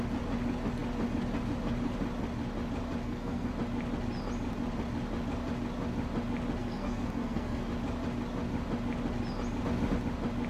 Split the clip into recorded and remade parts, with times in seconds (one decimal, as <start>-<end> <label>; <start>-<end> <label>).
0.0-3.0 recorded; 3.0-3.5 remade; 3.5-6.6 recorded; 6.6-7.7 remade; 7.7-10.5 recorded